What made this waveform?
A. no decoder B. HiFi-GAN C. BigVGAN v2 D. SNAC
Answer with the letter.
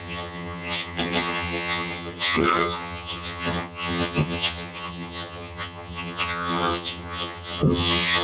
B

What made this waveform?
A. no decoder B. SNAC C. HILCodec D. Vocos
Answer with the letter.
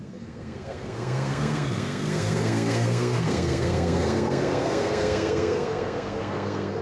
B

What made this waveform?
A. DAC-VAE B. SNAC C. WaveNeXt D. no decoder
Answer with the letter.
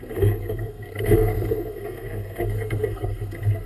B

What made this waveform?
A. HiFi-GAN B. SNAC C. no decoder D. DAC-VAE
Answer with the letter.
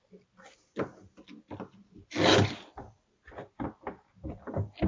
C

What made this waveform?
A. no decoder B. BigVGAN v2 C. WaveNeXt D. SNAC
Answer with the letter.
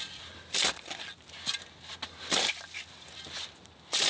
A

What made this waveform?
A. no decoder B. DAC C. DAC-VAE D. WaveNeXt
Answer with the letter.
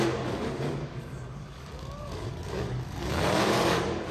B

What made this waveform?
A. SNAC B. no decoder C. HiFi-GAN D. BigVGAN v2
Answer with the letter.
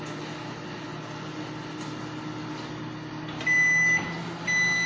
B